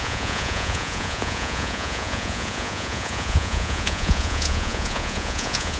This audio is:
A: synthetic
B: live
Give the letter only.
A